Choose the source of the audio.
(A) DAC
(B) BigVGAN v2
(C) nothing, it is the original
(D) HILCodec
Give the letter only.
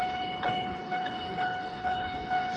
D